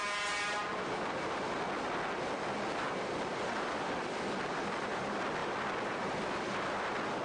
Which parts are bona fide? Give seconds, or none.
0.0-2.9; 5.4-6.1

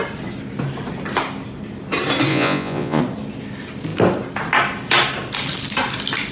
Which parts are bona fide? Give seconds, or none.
0.0-2.3; 3.0-6.3

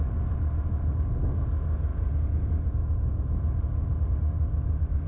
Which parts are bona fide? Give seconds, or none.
0.0-1.9; 3.6-5.1

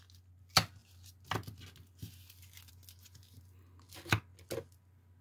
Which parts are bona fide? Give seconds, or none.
0.0-5.2

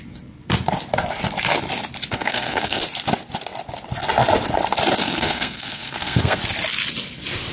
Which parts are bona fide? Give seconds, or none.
0.0-2.1; 2.8-5.0; 6.4-7.5